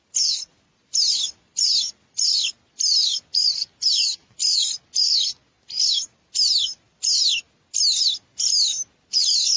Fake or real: real